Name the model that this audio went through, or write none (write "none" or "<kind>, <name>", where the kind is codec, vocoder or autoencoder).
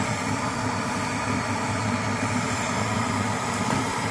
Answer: none